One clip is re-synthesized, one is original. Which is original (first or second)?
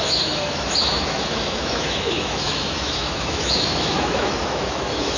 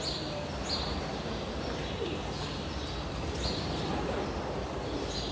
second